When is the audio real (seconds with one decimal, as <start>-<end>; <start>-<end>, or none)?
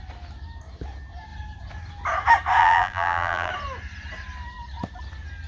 0.0-2.6; 3.5-5.5